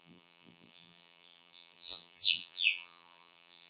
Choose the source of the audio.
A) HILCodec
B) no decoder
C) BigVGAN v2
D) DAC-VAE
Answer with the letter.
C